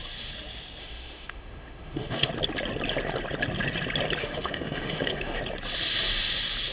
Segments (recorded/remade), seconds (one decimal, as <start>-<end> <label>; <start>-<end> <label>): 0.0-0.8 recorded; 0.8-2.3 remade; 2.3-4.2 recorded; 4.2-5.4 remade; 5.4-6.7 recorded